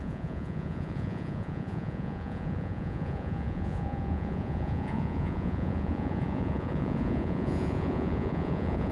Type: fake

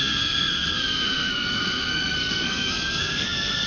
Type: fake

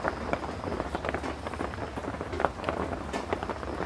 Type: real